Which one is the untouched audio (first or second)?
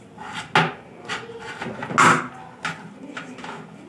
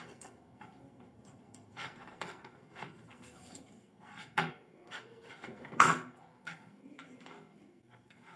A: first